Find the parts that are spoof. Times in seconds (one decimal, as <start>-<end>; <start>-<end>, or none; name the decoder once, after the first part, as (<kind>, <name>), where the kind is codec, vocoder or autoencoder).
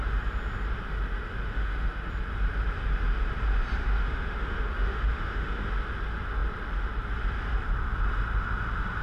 1.5-2.1 (autoencoder, DAC-VAE); 3.8-5.7